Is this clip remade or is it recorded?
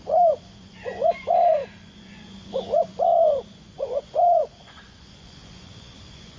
remade